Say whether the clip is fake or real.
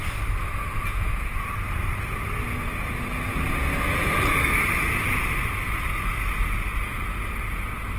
real